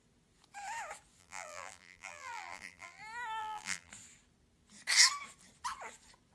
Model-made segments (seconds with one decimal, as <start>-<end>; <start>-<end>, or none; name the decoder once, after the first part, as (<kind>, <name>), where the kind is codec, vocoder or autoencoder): 1.2-3.0 (vocoder, BigVGAN v2); 3.4-3.9